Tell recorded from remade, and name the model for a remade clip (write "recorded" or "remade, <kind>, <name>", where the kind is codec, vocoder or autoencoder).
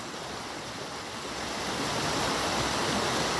recorded